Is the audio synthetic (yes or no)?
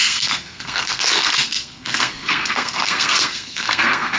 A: yes